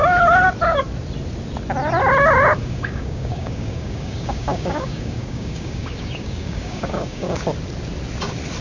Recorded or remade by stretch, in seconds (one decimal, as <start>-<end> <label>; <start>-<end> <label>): 0.0-2.6 recorded; 2.6-7.4 remade; 7.4-8.6 recorded